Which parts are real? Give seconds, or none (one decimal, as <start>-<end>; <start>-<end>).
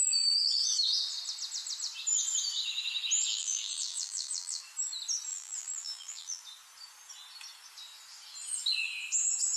0.0-3.3; 4.6-5.3; 6.4-9.6